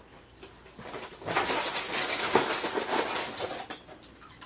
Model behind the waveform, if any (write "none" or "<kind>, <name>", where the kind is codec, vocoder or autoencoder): none